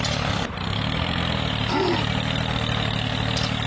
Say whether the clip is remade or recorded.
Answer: recorded